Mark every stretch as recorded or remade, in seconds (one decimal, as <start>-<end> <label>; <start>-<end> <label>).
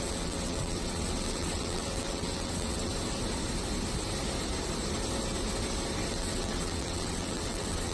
0.0-2.9 remade; 2.9-6.1 recorded; 6.1-7.9 remade